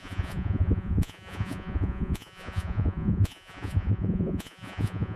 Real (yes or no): no